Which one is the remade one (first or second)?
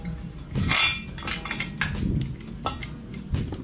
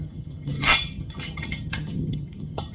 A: second